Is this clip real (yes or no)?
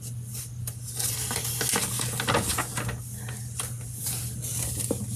yes